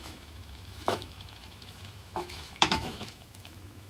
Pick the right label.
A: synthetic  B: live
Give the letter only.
A